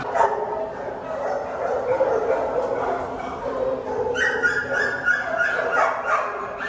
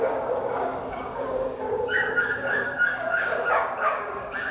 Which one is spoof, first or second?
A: second